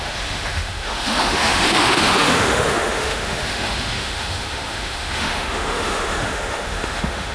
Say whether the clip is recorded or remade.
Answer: remade